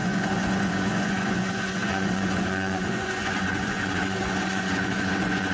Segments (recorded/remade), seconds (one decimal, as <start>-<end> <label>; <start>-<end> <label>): 0.0-5.5 remade